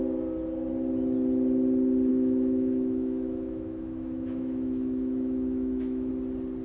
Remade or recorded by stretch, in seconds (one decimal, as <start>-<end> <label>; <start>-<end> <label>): 0.0-2.1 recorded; 2.1-6.1 remade; 6.1-6.6 recorded